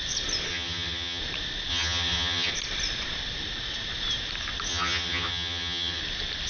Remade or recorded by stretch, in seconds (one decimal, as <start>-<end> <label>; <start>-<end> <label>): 0.0-0.5 recorded; 0.5-1.2 remade; 1.2-1.7 recorded; 1.7-2.5 remade; 2.5-4.7 recorded; 4.7-6.0 remade; 6.0-6.5 recorded